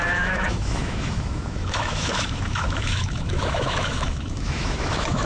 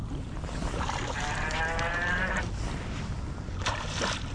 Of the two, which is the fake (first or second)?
first